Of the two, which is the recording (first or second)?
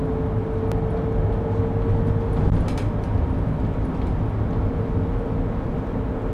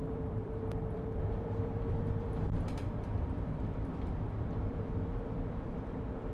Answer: first